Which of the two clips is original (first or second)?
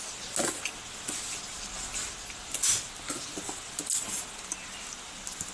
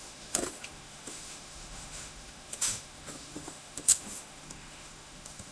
first